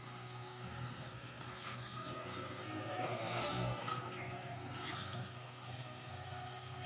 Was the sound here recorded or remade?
remade